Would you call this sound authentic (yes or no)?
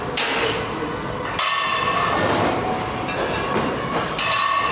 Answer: yes